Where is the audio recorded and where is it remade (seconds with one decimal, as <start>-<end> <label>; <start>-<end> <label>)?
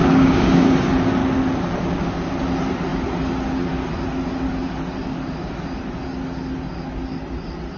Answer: 0.0-0.7 remade; 0.7-7.8 recorded